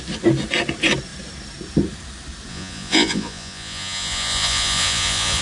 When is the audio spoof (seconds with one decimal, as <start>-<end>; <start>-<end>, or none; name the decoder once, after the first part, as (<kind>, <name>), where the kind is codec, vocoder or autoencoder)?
2.5-5.4 (vocoder, Vocos)